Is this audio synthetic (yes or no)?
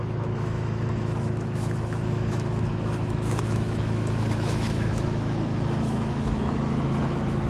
yes